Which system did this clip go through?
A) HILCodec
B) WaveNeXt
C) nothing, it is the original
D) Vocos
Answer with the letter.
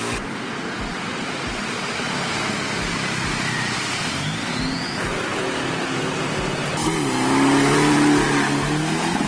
C